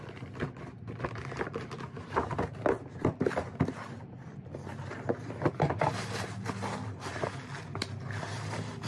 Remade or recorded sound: recorded